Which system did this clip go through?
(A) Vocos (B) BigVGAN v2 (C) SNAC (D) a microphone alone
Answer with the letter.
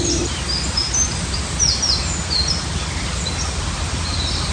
D